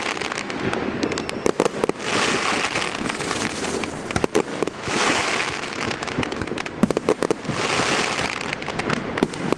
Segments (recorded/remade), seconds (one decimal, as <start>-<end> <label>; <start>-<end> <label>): 0.0-4.5 recorded; 4.5-6.4 remade; 6.4-9.6 recorded

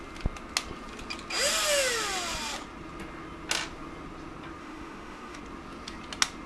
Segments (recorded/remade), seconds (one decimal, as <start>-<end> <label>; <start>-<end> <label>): 0.0-4.6 recorded; 4.6-5.4 remade; 5.4-6.5 recorded

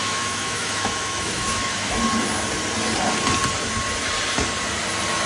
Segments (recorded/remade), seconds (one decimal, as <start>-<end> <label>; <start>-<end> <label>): 0.0-1.9 remade; 1.9-5.3 recorded

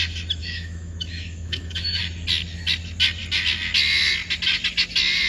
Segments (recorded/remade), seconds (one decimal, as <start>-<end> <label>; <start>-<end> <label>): 0.0-0.4 recorded; 0.4-2.0 remade; 2.0-5.3 recorded

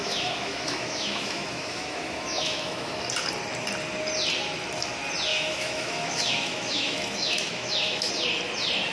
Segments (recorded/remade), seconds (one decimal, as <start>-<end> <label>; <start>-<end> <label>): 0.0-3.0 remade; 3.0-5.3 recorded; 5.3-8.1 remade; 8.1-8.9 recorded

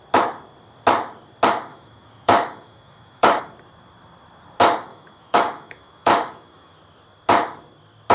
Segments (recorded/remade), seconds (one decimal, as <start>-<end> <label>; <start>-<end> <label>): 0.0-1.7 recorded; 1.7-3.4 remade; 3.4-4.9 recorded; 4.9-6.8 remade; 6.8-8.1 recorded

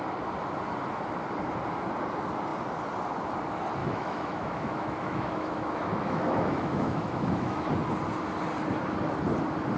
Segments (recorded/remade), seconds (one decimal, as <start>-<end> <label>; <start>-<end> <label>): 0.0-3.8 recorded; 3.8-7.7 remade; 7.7-9.8 recorded